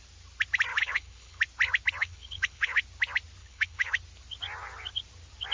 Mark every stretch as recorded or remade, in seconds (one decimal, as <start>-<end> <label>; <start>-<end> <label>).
0.0-0.7 recorded; 0.7-1.4 remade; 1.4-2.0 recorded; 2.0-2.8 remade; 2.8-3.4 recorded; 3.4-4.0 remade; 4.0-5.5 recorded